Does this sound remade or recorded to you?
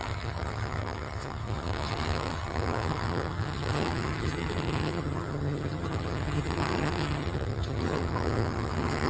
remade